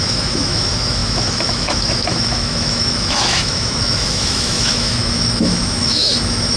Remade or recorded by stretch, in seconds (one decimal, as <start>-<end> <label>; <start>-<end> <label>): 0.0-6.6 remade